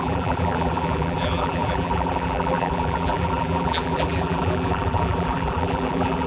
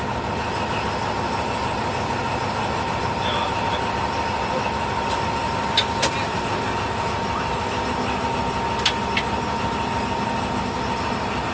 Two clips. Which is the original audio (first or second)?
second